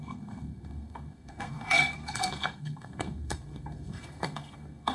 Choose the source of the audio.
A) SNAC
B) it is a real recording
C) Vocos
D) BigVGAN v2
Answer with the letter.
A